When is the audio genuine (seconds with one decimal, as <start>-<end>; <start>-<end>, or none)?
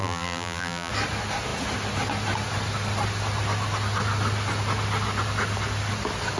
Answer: 0.9-6.4